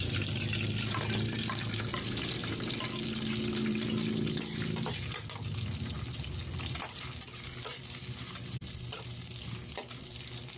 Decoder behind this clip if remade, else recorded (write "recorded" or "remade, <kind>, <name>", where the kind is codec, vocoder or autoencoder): recorded